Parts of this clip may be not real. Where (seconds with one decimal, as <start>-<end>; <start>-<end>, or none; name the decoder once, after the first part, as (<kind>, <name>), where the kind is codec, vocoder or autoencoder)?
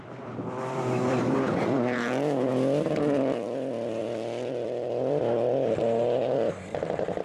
0.0-2.5 (vocoder, BigVGAN v2); 4.0-7.2